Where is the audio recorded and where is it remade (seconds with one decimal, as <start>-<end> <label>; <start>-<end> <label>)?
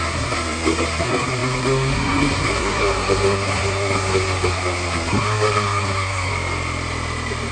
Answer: 0.0-6.3 remade; 6.3-7.5 recorded